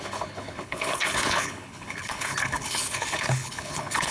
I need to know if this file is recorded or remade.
remade